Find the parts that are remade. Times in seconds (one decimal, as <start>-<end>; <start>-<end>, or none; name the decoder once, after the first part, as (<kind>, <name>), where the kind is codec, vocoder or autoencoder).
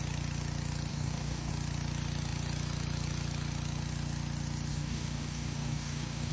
0.9-1.5 (codec, DAC); 4.7-6.3